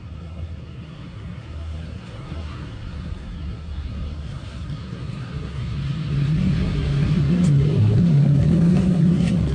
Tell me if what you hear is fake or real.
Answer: fake